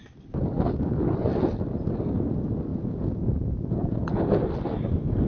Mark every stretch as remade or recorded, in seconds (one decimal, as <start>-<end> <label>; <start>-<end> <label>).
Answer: 0.0-2.7 recorded; 2.7-4.5 remade; 4.5-5.3 recorded